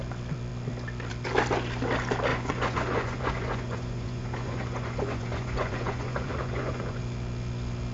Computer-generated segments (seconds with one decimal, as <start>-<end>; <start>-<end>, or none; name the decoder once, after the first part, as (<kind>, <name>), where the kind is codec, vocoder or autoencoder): 2.3-7.0 (vocoder, Vocos)